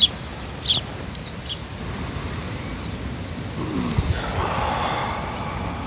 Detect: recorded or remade recorded